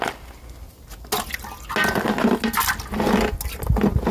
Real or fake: real